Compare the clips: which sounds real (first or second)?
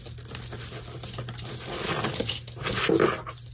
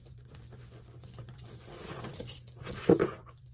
first